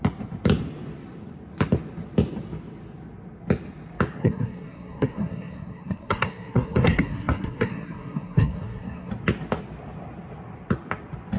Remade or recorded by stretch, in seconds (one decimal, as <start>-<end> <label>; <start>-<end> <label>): 0.0-4.2 recorded; 4.2-9.1 remade; 9.1-11.4 recorded